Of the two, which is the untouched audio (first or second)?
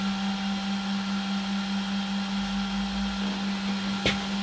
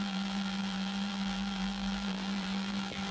first